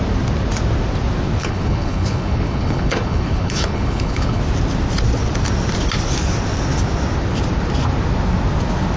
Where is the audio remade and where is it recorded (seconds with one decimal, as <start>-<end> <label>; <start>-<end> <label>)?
0.0-1.4 recorded; 1.4-4.4 remade; 4.4-9.0 recorded